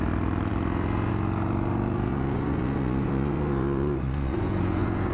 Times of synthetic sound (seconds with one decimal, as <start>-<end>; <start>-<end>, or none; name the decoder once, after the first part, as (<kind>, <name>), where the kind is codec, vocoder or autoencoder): 2.1-5.1 (vocoder, Vocos)